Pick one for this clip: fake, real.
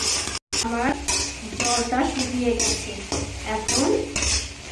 real